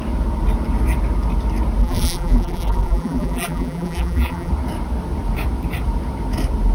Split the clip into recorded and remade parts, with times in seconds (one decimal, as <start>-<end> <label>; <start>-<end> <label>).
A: 0.0-1.8 recorded; 1.8-4.5 remade; 4.5-6.7 recorded